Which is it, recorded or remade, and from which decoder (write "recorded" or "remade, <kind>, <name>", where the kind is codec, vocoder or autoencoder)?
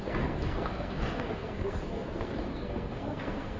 remade, codec, SNAC